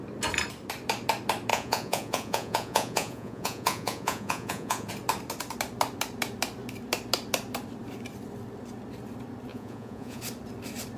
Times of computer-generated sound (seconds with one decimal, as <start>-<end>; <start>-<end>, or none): 1.5-4.9; 9.5-10.2